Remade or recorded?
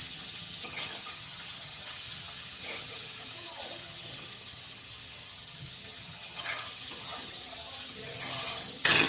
remade